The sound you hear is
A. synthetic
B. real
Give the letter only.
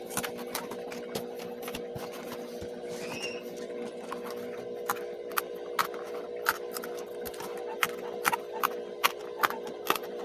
B